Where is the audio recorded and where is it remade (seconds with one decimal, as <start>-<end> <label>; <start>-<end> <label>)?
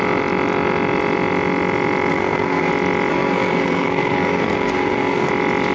0.0-2.1 recorded; 2.1-2.7 remade; 2.7-3.1 recorded; 3.1-5.3 remade; 5.3-5.7 recorded